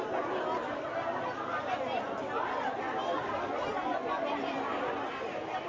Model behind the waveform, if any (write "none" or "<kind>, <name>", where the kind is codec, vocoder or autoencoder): none